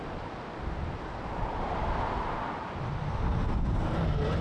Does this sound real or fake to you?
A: real